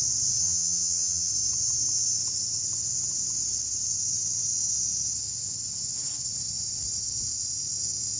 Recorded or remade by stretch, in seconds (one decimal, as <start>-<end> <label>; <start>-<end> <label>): 0.0-0.4 recorded; 0.4-1.3 remade; 1.3-8.2 recorded